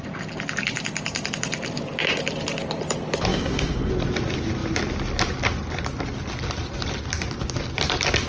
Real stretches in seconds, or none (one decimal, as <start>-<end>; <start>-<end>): 0.0-3.3; 3.9-8.3